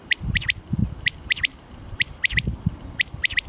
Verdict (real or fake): real